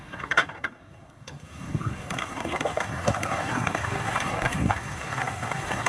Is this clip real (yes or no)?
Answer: no